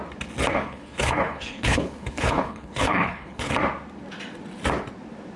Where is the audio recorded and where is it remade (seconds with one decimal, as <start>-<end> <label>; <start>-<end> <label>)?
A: 0.0-0.5 recorded; 0.5-3.5 remade; 3.5-5.4 recorded